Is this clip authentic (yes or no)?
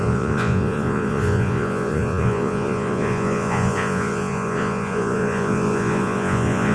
no